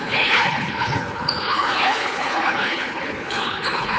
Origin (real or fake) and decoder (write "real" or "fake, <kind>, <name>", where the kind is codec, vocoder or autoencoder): fake, codec, HILCodec